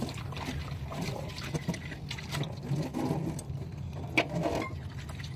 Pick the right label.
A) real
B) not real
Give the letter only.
A